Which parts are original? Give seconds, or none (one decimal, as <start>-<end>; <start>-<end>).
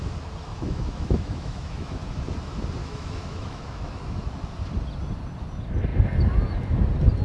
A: 0.0-0.5; 2.1-2.8; 4.2-7.2